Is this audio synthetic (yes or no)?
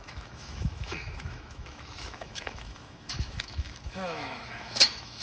yes